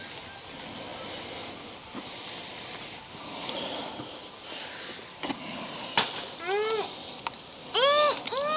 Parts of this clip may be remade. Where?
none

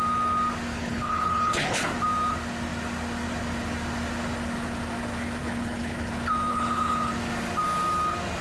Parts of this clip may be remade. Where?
0.7-1.8 (codec, HILCodec); 5.4-6.1; 6.5-7.1